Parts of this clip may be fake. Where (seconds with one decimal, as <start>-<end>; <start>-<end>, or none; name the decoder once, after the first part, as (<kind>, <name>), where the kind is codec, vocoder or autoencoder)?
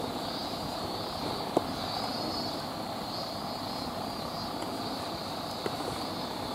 none